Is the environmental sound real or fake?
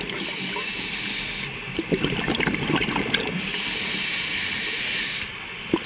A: real